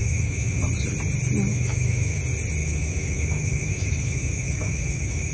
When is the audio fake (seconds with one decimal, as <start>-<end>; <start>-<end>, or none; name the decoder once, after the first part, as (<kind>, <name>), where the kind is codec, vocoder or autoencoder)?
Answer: 0.0-0.6 (autoencoder, DAC-VAE); 1.5-2.2; 2.6-5.3